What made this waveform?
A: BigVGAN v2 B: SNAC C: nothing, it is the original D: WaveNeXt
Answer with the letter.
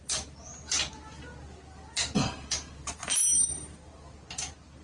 A